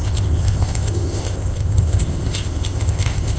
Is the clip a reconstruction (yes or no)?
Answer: yes